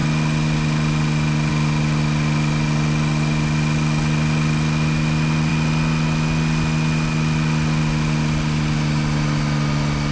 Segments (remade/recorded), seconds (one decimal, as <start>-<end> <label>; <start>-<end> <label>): 0.0-10.1 recorded